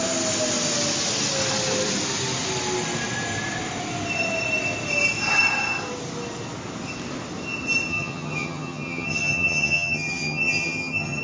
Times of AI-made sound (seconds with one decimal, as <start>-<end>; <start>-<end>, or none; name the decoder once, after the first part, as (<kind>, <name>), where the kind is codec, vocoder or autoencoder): 7.9-11.2 (vocoder, HiFi-GAN)